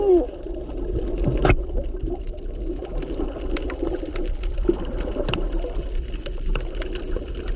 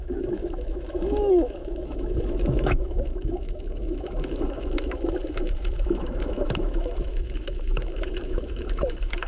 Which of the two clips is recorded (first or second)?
first